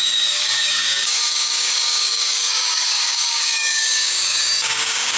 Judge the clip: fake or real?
fake